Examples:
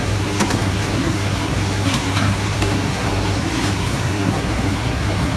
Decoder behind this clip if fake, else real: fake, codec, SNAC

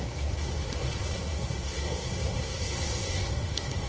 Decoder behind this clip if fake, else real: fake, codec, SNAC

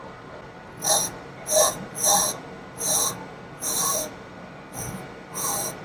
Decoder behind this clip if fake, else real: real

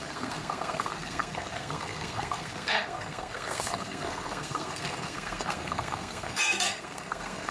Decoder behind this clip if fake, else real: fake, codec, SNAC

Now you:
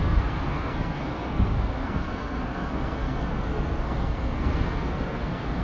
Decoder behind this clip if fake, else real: fake, codec, SNAC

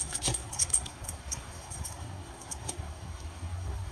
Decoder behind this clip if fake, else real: fake, codec, SNAC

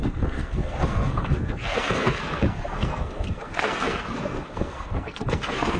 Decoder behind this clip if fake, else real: fake, codec, SNAC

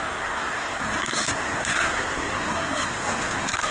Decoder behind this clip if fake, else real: fake, codec, SNAC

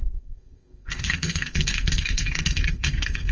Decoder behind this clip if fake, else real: fake, codec, SNAC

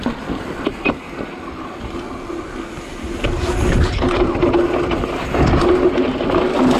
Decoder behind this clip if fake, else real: real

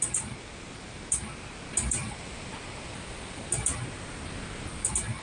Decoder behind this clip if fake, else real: real